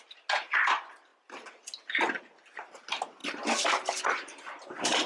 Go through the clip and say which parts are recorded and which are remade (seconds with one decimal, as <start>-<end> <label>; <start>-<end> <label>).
0.0-5.1 recorded